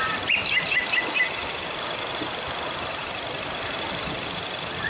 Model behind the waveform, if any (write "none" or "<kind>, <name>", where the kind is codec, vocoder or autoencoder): vocoder, BigVGAN v2